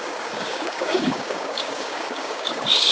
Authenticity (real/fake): fake